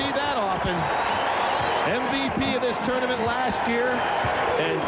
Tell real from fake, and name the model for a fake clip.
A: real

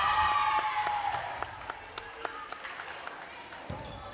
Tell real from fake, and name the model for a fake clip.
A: real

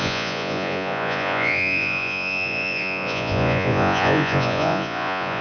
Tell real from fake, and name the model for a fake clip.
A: fake, vocoder, Vocos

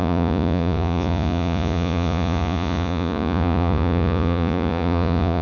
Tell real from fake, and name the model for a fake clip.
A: fake, vocoder, Vocos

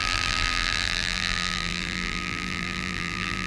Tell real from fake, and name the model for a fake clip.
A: fake, vocoder, BigVGAN v2